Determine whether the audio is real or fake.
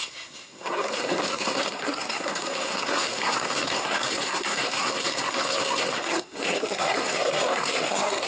fake